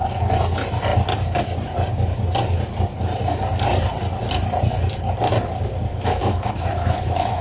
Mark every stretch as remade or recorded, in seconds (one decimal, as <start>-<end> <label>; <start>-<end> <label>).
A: 0.0-5.9 recorded; 5.9-7.4 remade